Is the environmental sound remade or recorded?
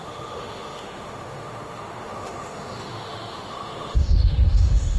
remade